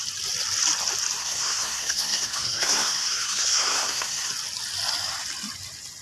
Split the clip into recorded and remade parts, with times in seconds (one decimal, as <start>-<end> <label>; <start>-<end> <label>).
0.0-1.2 recorded; 1.2-4.3 remade; 4.3-6.0 recorded